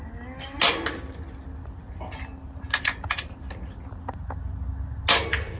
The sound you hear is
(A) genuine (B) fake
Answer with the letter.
A